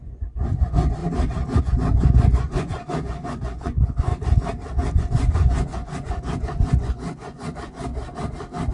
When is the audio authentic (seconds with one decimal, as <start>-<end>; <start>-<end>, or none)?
1.0-1.6; 4.1-5.0; 7.9-8.7